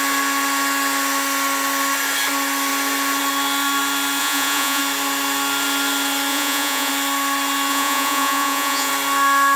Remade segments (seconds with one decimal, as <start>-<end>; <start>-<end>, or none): 4.2-4.8; 6.3-6.9; 7.7-8.9